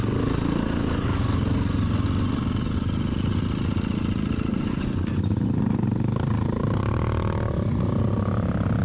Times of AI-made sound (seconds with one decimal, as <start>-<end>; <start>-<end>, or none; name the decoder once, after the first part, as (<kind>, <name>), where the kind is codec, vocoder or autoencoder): 4.5-5.2 (vocoder, Vocos)